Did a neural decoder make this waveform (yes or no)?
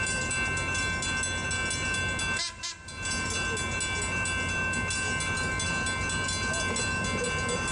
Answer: no